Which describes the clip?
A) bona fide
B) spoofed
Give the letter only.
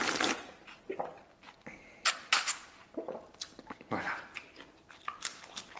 A